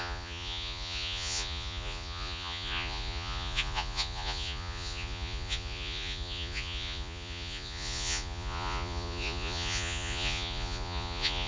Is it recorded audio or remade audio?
remade